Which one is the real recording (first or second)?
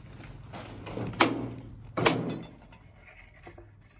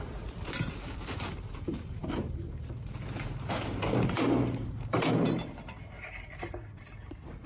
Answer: first